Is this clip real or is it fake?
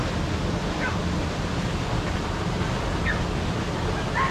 real